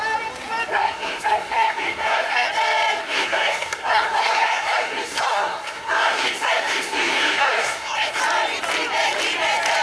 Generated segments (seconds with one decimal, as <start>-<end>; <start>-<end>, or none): 0.7-2.5; 3.0-8.2